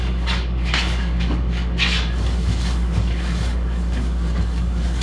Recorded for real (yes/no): no